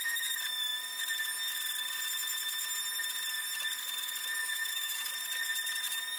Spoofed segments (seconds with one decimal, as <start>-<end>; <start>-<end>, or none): 4.4-5.1